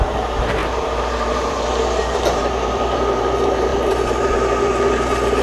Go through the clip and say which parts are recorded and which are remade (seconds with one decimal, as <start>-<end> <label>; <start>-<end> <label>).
0.0-5.4 remade